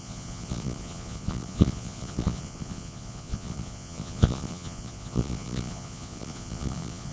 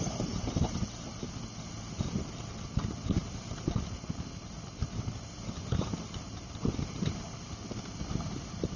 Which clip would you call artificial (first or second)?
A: first